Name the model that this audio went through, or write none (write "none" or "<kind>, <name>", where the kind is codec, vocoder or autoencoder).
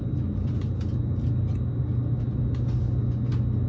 none